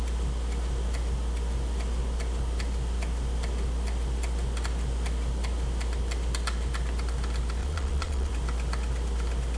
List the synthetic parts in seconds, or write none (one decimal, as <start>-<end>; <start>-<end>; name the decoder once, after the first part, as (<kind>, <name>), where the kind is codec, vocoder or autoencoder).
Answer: 7.6-8.3 (vocoder, Vocos)